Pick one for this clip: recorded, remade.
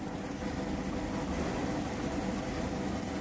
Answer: recorded